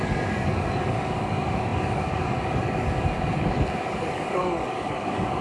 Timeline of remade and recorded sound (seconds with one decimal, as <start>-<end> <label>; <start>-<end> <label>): 0.0-5.4 remade